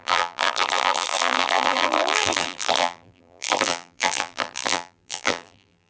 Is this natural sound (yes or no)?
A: no